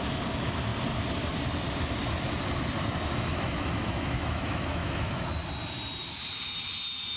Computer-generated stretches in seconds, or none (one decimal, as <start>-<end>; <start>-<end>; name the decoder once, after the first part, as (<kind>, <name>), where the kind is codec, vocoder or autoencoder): 3.3-5.3 (autoencoder, DAC-VAE)